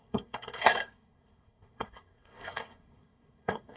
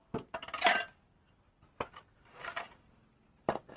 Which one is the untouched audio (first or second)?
second